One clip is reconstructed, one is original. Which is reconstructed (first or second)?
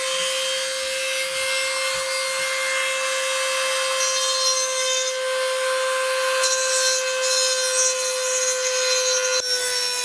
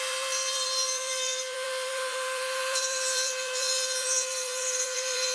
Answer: second